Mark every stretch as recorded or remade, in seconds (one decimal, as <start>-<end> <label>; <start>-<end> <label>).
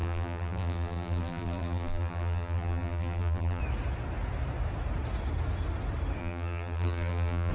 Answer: 0.0-3.6 remade; 3.6-6.2 recorded; 6.2-7.5 remade